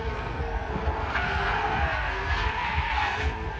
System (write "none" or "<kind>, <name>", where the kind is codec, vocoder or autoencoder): codec, SNAC